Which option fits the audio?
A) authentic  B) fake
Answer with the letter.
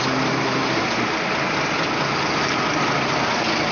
A